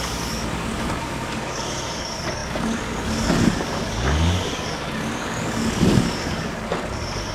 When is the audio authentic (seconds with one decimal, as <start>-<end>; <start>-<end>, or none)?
none